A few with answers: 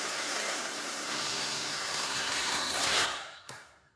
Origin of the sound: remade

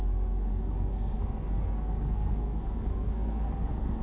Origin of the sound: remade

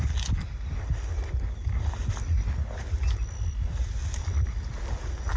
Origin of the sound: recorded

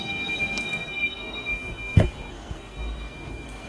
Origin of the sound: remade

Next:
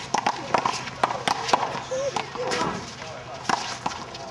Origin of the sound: recorded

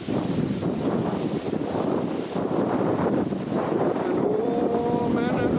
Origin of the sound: remade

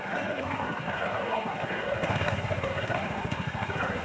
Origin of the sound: remade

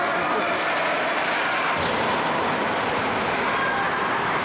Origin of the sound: recorded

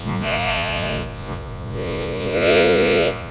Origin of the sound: remade